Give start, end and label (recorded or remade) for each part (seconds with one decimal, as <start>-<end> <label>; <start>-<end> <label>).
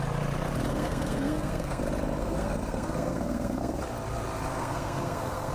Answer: 0.0-0.7 recorded; 0.7-1.8 remade; 1.8-2.2 recorded; 2.2-3.8 remade; 3.8-4.5 recorded; 4.5-5.5 remade